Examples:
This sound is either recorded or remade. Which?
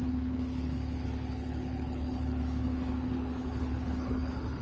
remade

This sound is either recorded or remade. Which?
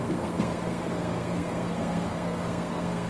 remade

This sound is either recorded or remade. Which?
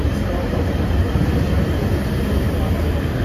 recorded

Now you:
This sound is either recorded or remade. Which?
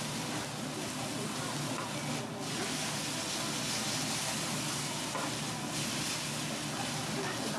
recorded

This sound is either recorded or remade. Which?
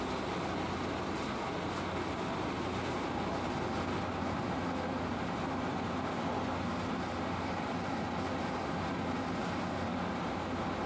recorded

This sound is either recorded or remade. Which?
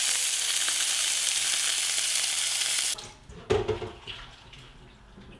recorded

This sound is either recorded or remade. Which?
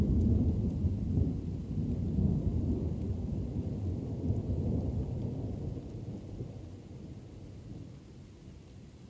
recorded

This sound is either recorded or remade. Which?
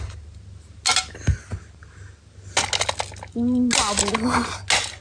recorded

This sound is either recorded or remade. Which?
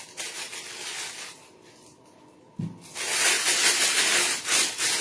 recorded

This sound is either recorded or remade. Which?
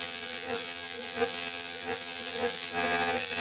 remade